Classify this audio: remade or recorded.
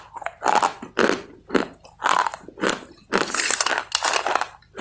recorded